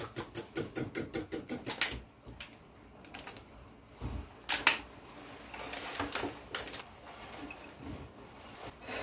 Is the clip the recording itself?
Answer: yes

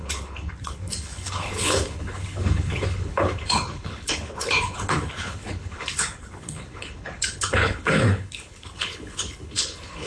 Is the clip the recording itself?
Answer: no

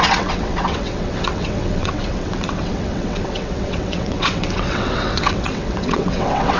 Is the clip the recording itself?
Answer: no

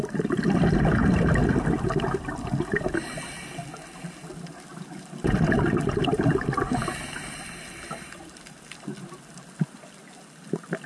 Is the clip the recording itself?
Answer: yes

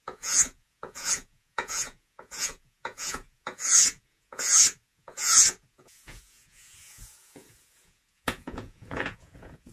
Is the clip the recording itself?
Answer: no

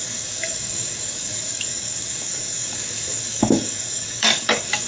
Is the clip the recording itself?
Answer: no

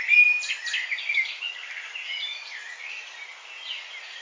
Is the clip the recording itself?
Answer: yes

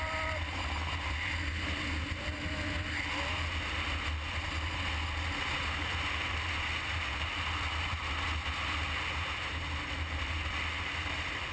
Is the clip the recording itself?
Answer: yes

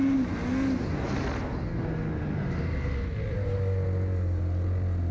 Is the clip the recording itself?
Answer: yes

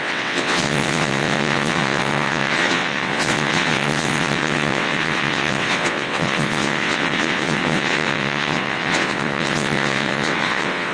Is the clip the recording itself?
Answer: no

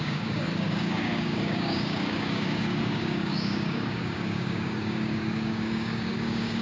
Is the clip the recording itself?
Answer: no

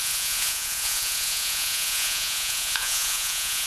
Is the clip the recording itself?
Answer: no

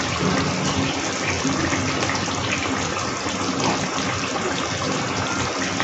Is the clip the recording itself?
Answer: yes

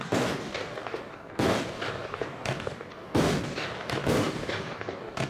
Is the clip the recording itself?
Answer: no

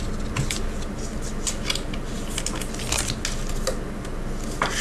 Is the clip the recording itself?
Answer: yes